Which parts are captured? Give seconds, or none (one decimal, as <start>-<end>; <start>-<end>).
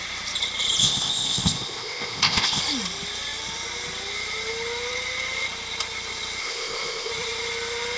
0.0-0.8; 2.6-6.4; 7.1-8.0